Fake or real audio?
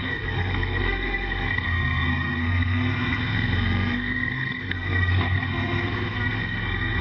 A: fake